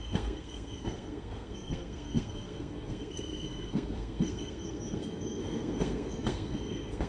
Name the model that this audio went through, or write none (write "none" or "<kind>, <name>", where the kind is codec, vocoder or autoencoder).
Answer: codec, SNAC